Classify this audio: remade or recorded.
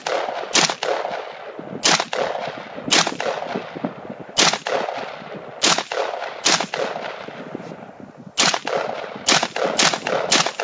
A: recorded